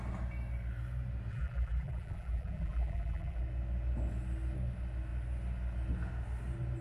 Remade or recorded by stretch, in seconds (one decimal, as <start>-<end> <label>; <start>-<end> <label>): 0.0-1.3 recorded; 1.3-3.4 remade; 3.4-6.8 recorded